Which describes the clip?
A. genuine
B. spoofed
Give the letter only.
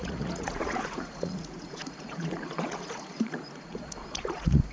B